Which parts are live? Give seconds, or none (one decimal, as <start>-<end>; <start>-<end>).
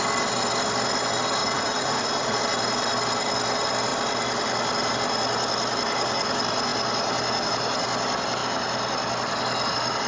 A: 0.0-1.4; 2.4-10.1